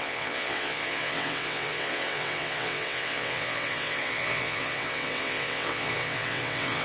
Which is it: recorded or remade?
remade